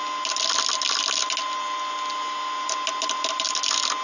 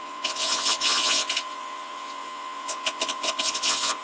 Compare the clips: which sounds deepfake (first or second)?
second